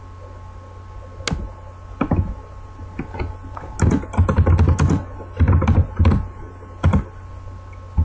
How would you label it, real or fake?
real